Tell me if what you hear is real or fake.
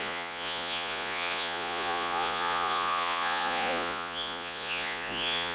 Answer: fake